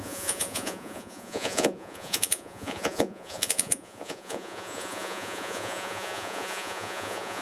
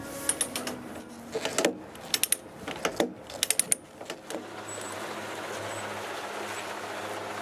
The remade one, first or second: first